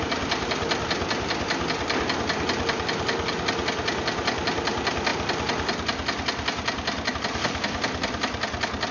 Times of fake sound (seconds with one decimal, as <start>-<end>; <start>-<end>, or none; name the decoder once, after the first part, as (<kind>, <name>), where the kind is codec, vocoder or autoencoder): none